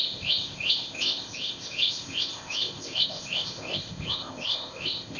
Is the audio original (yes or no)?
no